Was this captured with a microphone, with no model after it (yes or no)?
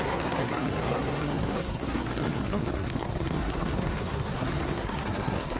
no